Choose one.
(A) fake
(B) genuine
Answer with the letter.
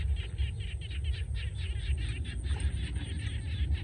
B